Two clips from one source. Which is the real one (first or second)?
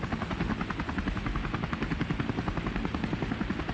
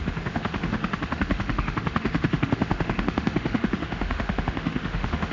first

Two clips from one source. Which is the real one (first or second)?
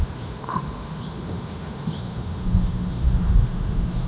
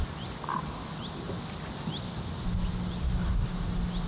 second